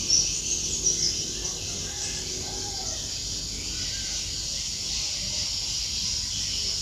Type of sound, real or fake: fake